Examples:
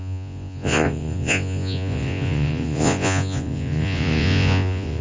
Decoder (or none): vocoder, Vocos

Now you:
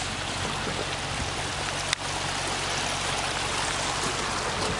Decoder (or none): none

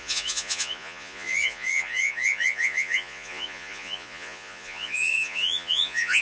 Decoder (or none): vocoder, Vocos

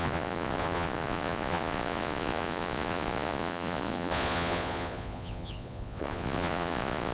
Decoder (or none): vocoder, Vocos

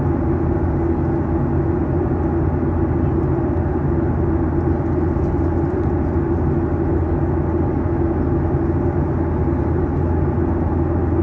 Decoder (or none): none